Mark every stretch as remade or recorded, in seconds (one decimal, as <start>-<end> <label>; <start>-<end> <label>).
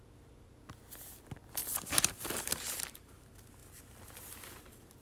0.0-1.6 recorded; 1.6-3.2 remade; 3.2-5.0 recorded